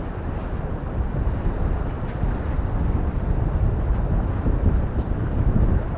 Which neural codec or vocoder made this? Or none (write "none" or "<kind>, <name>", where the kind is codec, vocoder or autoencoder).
none